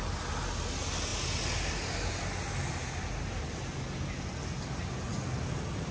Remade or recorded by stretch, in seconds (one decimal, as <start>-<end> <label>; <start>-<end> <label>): 0.0-5.9 recorded